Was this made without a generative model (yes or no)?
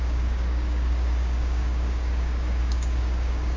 no